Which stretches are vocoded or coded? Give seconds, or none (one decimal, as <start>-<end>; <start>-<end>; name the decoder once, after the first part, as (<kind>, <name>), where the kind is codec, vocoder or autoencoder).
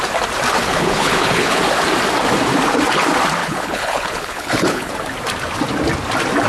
0.6-1.6 (codec, HILCodec); 3.4-4.9